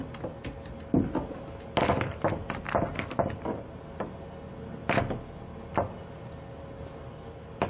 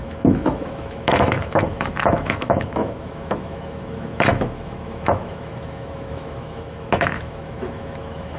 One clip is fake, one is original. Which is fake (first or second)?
second